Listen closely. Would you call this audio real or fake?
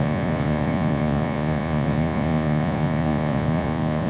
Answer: fake